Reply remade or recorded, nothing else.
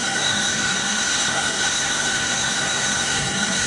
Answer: remade